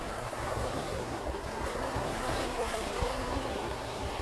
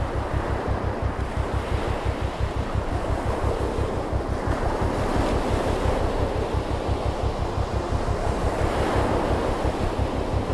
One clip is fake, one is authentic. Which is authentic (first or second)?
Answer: second